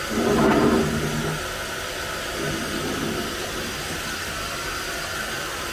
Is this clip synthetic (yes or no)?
no